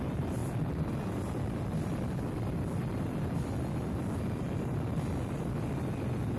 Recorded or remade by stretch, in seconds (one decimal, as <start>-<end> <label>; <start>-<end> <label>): 0.0-6.4 recorded